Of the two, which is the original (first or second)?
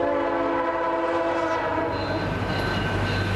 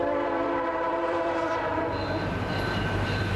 first